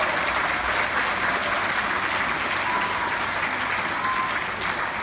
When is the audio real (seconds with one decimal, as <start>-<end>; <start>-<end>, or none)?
0.0-5.0